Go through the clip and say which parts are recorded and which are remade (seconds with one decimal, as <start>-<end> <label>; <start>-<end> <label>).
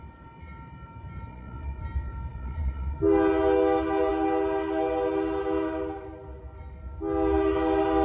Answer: 0.0-1.3 recorded; 1.3-1.8 remade; 1.8-2.3 recorded; 2.3-3.0 remade; 3.0-8.0 recorded